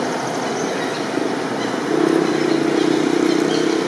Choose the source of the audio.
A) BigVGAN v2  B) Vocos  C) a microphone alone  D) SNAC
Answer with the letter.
C